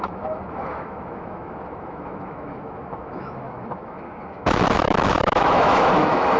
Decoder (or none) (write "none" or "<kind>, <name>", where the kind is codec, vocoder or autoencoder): autoencoder, DAC-VAE